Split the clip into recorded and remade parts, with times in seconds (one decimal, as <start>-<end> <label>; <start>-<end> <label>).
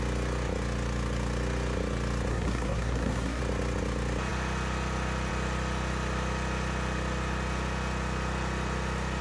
0.0-2.3 recorded; 2.3-3.4 remade; 3.4-9.2 recorded